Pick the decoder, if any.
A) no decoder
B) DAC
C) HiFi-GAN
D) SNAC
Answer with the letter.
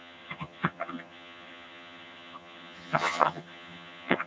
C